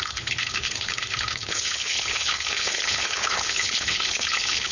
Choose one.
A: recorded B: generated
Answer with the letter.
B